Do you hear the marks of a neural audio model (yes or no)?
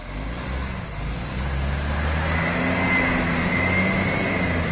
no